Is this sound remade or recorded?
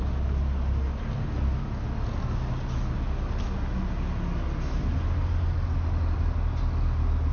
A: recorded